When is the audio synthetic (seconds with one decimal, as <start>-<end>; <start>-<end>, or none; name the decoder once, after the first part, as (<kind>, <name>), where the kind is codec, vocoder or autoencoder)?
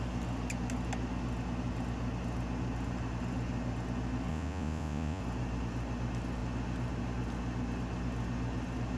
4.3-5.2 (vocoder, Vocos)